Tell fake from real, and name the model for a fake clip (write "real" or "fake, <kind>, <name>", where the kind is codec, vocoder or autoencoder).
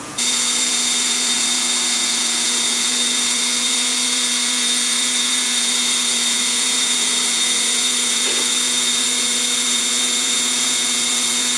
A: fake, vocoder, Vocos